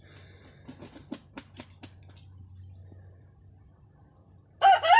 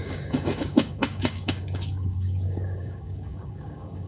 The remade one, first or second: second